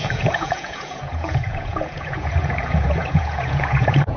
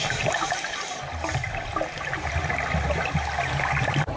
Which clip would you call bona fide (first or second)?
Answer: second